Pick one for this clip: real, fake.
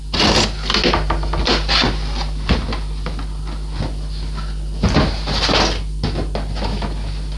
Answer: real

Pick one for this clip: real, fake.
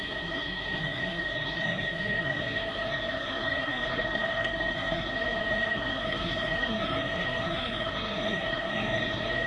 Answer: fake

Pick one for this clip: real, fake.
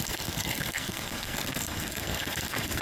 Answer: fake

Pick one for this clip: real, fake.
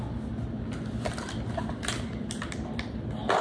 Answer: real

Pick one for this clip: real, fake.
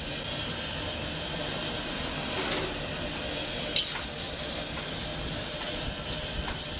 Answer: real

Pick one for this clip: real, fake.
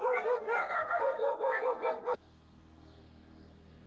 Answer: fake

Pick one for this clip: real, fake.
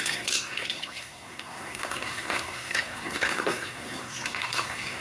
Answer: fake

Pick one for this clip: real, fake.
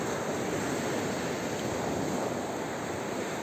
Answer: real